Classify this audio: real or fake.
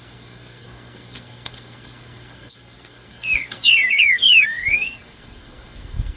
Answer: fake